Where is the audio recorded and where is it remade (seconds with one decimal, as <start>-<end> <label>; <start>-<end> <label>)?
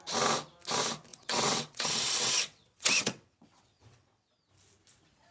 0.0-1.1 recorded; 1.1-4.3 remade; 4.3-5.3 recorded